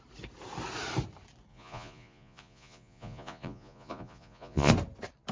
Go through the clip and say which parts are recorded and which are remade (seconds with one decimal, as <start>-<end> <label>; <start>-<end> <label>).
0.0-1.5 recorded; 1.5-4.7 remade; 4.7-5.3 recorded